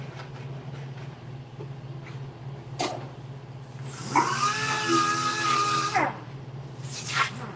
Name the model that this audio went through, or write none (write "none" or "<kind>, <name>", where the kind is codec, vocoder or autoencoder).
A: none